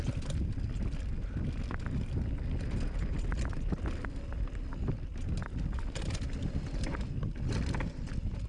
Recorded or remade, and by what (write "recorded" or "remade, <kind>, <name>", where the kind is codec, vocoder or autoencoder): recorded